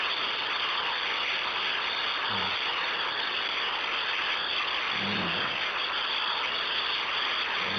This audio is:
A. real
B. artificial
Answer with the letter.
A